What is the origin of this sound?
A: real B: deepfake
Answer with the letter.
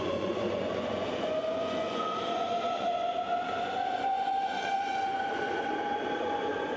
B